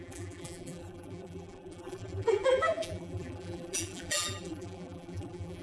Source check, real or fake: fake